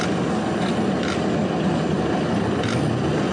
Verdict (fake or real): real